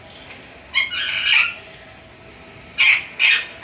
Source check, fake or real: real